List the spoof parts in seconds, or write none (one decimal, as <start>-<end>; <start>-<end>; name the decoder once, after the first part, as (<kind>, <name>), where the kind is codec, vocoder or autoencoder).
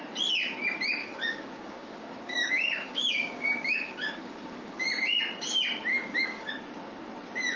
1.0-4.9 (codec, DAC); 5.9-6.5